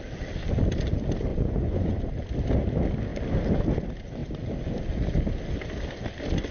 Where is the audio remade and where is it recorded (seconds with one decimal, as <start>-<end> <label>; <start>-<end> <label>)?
0.0-1.3 recorded; 1.3-2.1 remade; 2.1-6.5 recorded